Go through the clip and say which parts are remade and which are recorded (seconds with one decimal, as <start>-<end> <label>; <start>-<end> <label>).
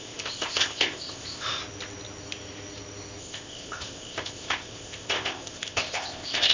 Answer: 0.0-1.6 remade; 1.6-3.2 recorded; 3.2-6.5 remade